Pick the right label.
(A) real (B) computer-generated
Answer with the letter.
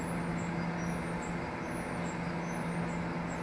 A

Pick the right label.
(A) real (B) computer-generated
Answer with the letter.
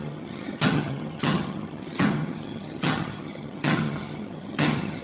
B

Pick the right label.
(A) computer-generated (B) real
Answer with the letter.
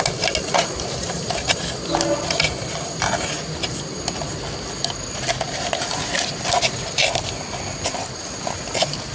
B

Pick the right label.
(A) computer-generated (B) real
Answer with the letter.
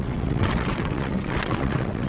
A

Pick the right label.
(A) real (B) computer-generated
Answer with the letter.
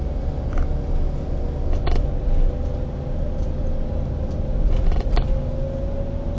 A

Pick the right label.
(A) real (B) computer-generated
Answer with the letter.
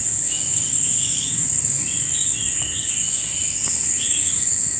B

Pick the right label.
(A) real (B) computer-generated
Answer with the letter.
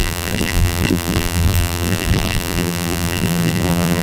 B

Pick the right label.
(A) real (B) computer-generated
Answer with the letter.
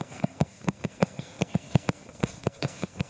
B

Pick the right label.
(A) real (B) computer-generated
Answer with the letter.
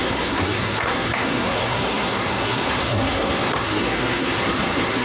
B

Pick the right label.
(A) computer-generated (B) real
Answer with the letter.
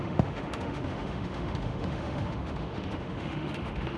A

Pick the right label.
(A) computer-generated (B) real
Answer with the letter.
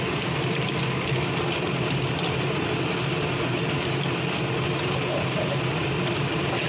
B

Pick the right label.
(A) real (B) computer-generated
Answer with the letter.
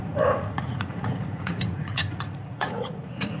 B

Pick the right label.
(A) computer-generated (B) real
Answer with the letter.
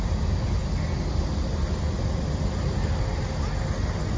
B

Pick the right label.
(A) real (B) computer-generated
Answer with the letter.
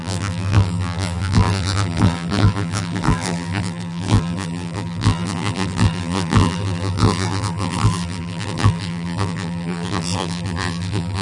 B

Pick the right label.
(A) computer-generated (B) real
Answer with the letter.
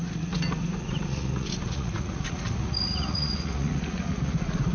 A